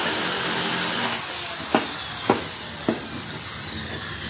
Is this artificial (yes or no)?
no